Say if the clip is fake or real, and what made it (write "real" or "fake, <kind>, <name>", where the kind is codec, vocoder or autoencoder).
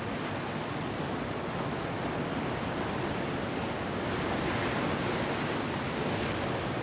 real